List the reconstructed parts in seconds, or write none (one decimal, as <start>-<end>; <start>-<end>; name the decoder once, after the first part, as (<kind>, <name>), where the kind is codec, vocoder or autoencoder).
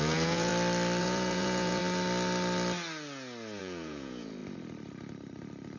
0.0-0.5 (vocoder, Vocos); 1.0-1.8; 3.6-4.4